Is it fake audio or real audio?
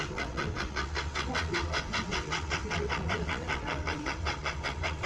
fake